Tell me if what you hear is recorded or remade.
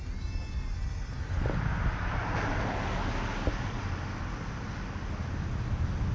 recorded